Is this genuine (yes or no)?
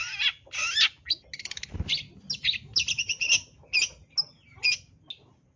yes